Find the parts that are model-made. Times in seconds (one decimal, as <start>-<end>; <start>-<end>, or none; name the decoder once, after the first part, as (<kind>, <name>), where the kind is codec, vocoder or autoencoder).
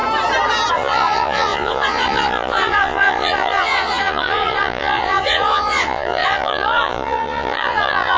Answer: 0.7-8.2 (vocoder, Vocos)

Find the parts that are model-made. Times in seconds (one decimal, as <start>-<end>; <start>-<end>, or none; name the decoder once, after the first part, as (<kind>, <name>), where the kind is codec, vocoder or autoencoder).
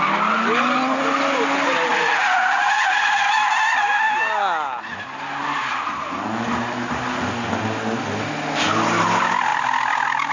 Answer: 1.9-3.2 (vocoder, Vocos)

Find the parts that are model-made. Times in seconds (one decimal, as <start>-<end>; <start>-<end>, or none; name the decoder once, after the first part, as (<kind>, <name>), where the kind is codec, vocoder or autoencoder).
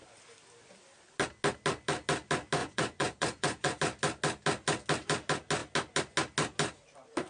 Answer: 2.6-3.8 (vocoder, Vocos)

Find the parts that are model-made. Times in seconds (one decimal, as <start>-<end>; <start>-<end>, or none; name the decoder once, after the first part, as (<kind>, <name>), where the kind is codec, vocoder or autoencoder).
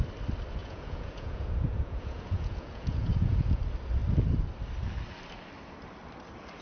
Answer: 0.6-3.6 (vocoder, Vocos)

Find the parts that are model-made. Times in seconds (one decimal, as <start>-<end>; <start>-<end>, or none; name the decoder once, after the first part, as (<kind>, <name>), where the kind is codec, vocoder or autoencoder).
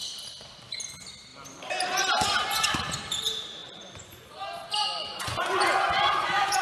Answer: 3.6-4.3 (vocoder, Vocos); 5.0-6.6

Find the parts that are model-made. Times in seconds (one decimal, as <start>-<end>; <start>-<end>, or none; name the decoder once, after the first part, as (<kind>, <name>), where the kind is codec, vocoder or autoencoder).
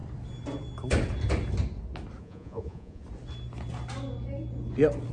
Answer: 2.2-3.0 (vocoder, Vocos)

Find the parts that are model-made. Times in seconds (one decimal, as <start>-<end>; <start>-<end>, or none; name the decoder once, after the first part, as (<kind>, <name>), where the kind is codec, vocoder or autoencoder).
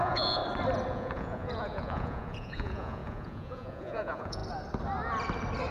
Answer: 0.0-0.4 (vocoder, Vocos); 0.9-4.4